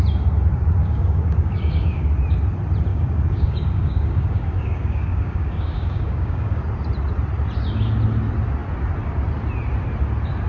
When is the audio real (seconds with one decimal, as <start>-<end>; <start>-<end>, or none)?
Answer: 0.0-0.8; 2.0-2.9; 6.6-10.5